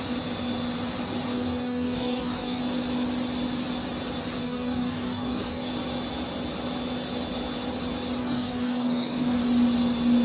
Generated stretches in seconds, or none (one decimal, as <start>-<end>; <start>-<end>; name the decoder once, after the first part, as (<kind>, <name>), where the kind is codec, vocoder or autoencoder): 1.3-2.6 (codec, DAC); 4.4-5.7; 8.2-9.4